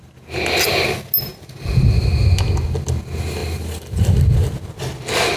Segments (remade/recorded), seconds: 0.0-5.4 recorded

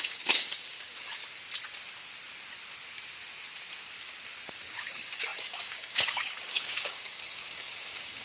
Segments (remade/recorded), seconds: 0.0-1.2 remade; 1.2-4.5 recorded; 4.5-8.2 remade